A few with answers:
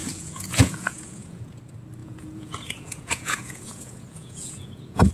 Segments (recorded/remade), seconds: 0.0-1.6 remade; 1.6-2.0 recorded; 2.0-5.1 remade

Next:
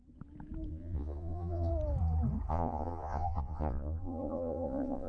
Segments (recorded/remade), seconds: 0.0-0.7 recorded; 0.7-1.7 remade; 1.7-2.5 recorded; 2.5-5.1 remade

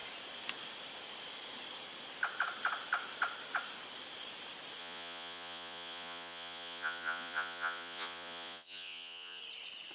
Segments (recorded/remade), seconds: 0.0-4.8 recorded; 4.8-9.4 remade; 9.4-9.9 recorded

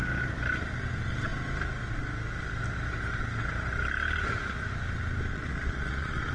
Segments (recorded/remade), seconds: 0.0-5.3 recorded; 5.3-6.3 remade

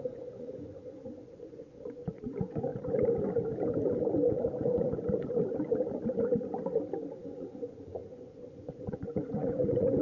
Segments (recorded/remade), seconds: 0.0-2.7 remade; 2.7-4.5 recorded; 4.5-5.0 remade; 5.0-7.2 recorded; 7.2-10.0 remade

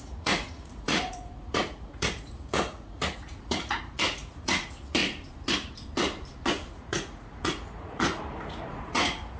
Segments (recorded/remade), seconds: 0.0-5.0 remade; 5.0-6.7 recorded; 6.7-9.4 remade